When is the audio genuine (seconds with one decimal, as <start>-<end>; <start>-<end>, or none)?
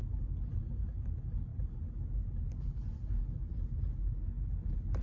0.0-5.0